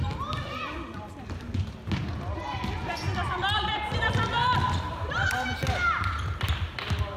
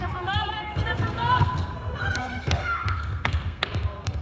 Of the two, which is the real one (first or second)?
first